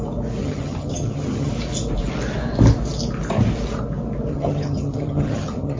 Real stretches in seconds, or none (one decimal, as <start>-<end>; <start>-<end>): 0.0-0.4; 1.5-4.3